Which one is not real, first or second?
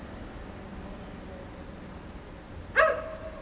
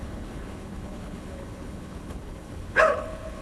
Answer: second